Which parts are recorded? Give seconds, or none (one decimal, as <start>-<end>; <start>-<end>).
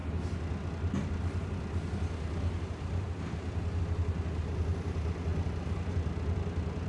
0.0-6.9